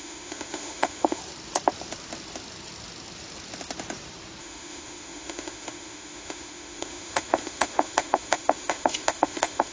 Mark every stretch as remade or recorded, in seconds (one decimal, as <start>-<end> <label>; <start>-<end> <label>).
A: 0.0-1.2 remade; 1.2-4.4 recorded; 4.4-9.7 remade